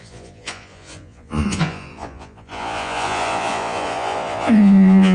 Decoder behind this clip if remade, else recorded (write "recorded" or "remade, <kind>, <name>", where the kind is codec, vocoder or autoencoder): remade, vocoder, Vocos